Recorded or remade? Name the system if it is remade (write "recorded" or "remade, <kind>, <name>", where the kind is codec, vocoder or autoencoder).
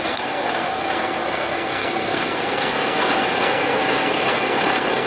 remade, codec, SNAC